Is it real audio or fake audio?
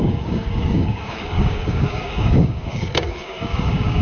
fake